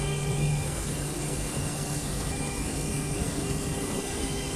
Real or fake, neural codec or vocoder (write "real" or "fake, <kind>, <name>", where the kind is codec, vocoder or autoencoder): fake, codec, SNAC